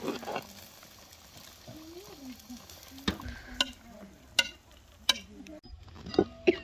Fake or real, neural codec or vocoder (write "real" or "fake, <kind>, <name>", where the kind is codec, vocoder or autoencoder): real